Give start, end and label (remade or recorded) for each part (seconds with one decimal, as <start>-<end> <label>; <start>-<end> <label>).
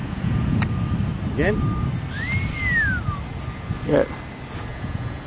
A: 0.0-0.6 remade; 0.6-4.7 recorded; 4.7-5.3 remade